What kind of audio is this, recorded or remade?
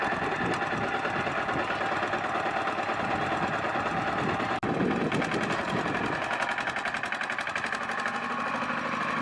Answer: recorded